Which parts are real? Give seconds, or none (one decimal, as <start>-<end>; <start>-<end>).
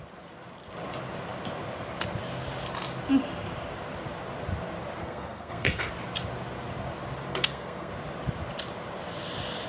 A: 0.0-5.0; 5.9-7.3; 7.9-9.7